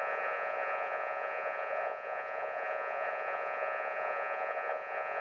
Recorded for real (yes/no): no